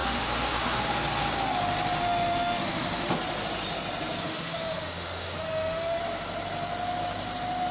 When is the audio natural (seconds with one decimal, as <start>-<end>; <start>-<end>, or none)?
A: 0.9-2.0; 3.1-4.2; 6.0-7.7